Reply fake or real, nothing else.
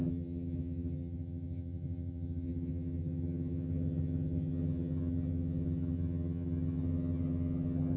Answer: fake